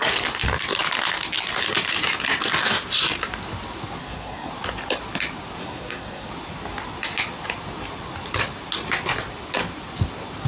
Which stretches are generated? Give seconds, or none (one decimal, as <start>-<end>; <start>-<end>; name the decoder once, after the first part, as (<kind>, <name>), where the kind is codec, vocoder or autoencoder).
4.0-4.5 (codec, SNAC); 5.6-6.3